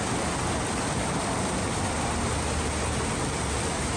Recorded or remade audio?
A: recorded